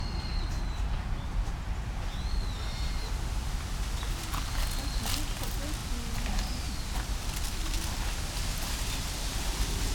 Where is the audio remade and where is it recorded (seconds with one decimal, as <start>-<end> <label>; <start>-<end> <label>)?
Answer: 0.0-9.9 recorded